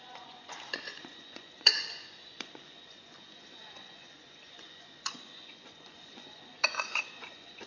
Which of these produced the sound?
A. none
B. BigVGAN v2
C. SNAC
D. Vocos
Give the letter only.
D